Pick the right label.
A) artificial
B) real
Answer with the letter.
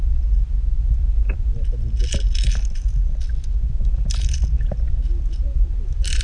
B